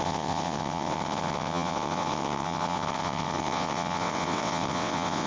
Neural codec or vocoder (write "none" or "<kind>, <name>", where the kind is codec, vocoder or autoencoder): vocoder, WaveNeXt